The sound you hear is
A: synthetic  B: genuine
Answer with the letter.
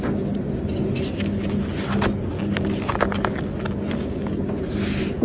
B